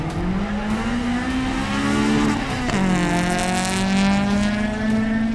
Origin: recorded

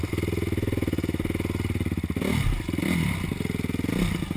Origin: recorded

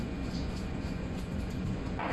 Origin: remade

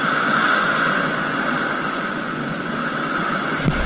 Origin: remade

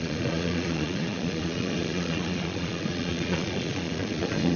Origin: remade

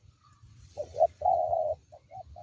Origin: remade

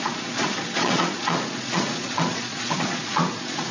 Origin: remade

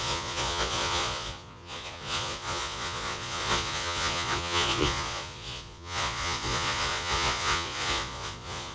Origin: remade